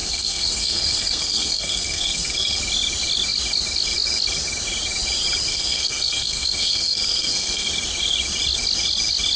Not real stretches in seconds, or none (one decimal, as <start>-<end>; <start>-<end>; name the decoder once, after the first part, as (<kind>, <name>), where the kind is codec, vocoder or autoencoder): 0.0-2.6 (codec, SNAC); 5.5-7.7